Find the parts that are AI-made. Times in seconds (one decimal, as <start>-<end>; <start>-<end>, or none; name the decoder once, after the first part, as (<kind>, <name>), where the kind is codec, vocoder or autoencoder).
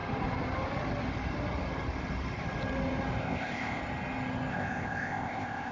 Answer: 3.2-3.8 (codec, ZipCodec); 4.5-5.7